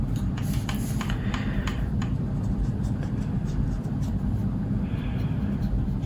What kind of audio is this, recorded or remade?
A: remade